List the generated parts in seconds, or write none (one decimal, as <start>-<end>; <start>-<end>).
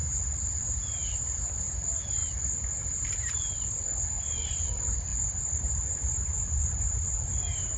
0.0-2.2; 2.8-3.7; 4.6-5.1; 5.9-7.8